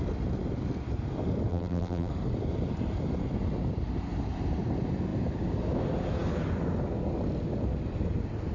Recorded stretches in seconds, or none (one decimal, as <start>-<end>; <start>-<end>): 0.0-1.5; 2.1-8.5